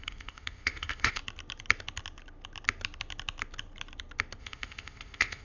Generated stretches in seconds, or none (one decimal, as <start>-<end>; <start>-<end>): 0.0-1.2; 4.4-5.4